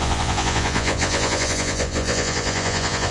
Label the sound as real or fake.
fake